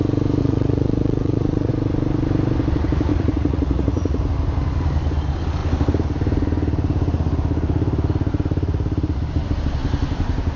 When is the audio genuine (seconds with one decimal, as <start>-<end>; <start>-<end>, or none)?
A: 0.0-0.4; 1.7-3.1; 4.2-10.6